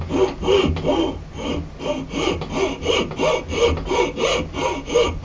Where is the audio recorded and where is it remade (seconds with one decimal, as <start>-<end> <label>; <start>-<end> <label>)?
0.0-5.2 recorded